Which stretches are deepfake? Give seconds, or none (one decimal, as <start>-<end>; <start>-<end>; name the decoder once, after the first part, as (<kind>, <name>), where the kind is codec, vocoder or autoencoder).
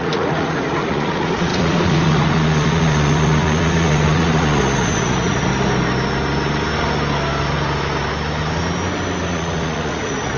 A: 0.0-5.5 (vocoder, Vocos); 9.3-10.4